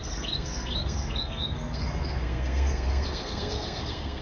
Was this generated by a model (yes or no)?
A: yes